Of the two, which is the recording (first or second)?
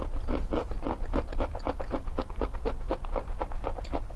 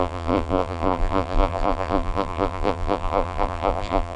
first